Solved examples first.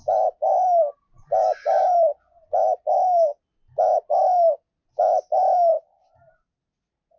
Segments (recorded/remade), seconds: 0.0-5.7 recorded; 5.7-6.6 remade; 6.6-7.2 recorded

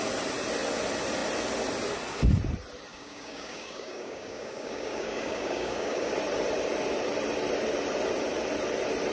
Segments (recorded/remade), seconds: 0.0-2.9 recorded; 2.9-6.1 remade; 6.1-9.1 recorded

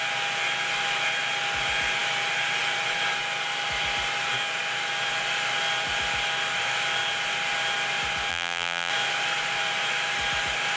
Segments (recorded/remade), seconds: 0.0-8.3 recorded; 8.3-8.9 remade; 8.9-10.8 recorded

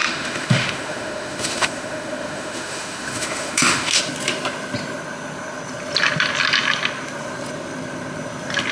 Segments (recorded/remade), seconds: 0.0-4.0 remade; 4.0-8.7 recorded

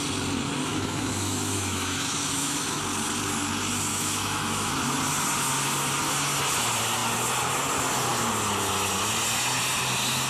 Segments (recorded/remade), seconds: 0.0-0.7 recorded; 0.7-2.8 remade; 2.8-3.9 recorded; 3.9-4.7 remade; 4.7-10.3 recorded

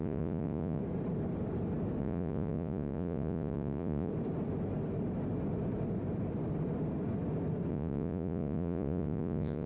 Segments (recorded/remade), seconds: 0.0-0.8 remade; 0.8-2.0 recorded; 2.0-4.1 remade; 4.1-7.7 recorded; 7.7-9.7 remade

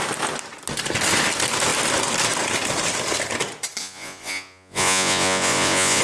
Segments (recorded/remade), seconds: 0.0-3.8 recorded; 3.8-6.0 remade